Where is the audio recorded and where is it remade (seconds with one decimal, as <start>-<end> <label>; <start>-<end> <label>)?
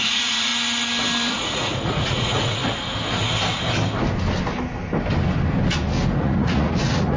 0.0-0.5 remade; 0.5-1.4 recorded; 1.4-2.6 remade; 2.6-6.2 recorded; 6.2-7.2 remade